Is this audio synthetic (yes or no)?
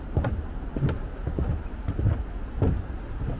no